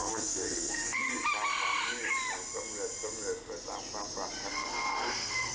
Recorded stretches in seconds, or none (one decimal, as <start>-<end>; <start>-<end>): 1.1-4.5